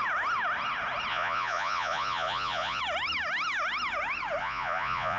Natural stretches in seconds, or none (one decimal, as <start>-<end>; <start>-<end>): 0.0-1.1; 2.8-4.4